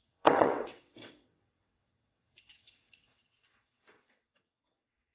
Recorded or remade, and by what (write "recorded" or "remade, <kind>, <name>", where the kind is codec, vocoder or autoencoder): remade, vocoder, WaveNeXt